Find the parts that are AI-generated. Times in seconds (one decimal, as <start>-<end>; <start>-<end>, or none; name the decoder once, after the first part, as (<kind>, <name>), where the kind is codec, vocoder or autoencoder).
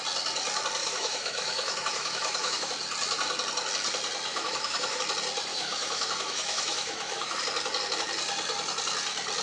0.8-2.7 (autoencoder, DAC-VAE); 4.3-5.0; 5.5-7.4